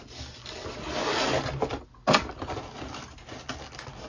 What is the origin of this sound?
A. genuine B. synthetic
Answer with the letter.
A